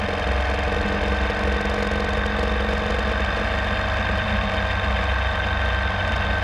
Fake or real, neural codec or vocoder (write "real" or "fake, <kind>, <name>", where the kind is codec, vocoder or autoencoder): real